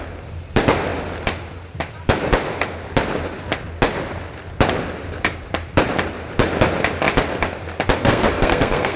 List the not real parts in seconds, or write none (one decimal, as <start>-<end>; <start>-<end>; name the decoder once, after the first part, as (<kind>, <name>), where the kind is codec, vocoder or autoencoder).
8.0-9.0 (codec, SNAC)